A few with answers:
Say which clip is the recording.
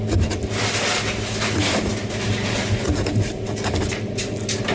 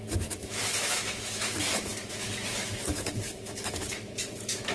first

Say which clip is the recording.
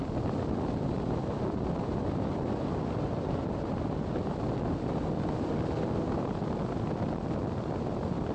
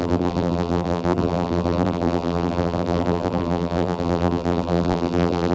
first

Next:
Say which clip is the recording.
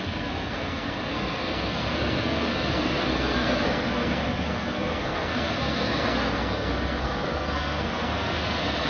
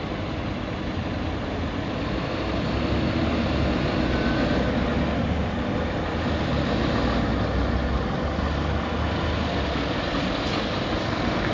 second